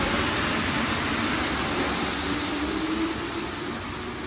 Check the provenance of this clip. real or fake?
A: real